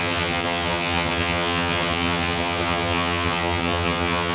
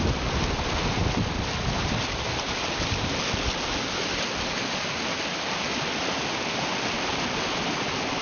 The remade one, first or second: first